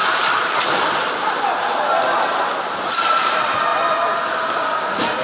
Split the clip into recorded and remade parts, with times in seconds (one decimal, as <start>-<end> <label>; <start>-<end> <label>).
0.0-5.2 recorded